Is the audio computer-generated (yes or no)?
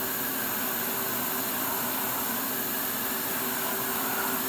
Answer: no